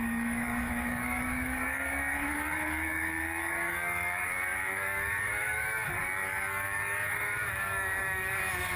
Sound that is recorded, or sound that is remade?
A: remade